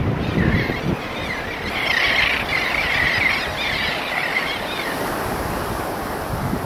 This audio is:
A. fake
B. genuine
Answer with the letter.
B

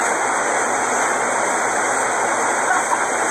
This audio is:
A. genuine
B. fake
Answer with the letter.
A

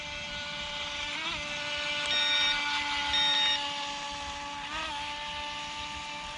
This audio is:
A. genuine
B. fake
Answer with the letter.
A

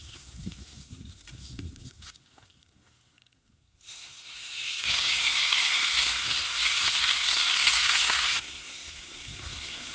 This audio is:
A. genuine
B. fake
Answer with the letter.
B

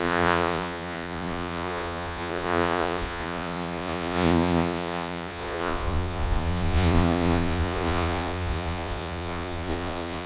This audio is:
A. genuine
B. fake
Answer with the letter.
B